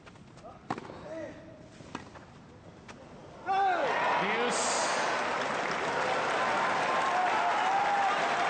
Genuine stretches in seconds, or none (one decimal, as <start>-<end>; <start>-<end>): 0.0-8.5